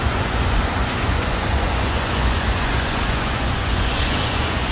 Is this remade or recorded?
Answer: remade